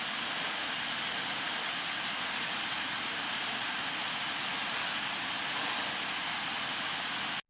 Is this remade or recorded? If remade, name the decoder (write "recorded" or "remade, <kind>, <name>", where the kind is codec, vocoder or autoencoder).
recorded